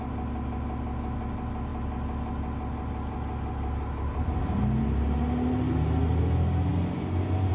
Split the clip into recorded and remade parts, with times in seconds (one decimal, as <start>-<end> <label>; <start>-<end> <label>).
0.0-7.5 recorded